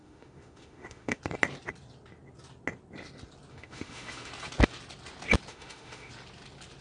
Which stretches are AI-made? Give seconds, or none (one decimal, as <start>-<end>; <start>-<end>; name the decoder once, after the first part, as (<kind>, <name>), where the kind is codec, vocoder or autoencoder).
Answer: 0.0-1.2 (autoencoder, DAC-VAE); 3.5-4.3; 5.5-6.1